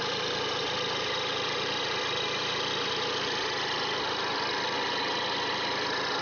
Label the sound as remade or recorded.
recorded